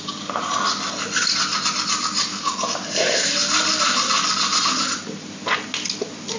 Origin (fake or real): real